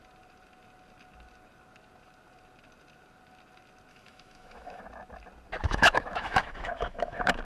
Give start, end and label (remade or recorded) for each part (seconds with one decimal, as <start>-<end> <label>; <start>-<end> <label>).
0.0-3.9 recorded; 3.9-4.8 remade; 4.8-5.6 recorded; 5.6-7.4 remade